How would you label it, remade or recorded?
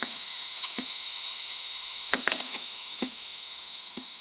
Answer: remade